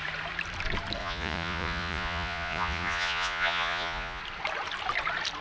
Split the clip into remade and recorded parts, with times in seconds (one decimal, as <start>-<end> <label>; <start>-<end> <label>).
0.0-1.0 recorded; 1.0-4.2 remade; 4.2-5.4 recorded